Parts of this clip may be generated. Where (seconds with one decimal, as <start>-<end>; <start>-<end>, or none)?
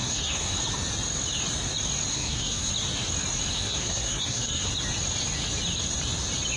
0.0-0.6; 2.1-2.7; 3.5-4.7